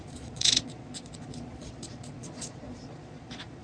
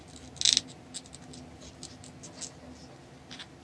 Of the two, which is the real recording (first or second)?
second